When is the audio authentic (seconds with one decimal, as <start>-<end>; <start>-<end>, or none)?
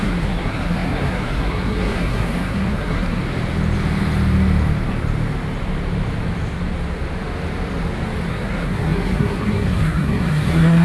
3.2-8.3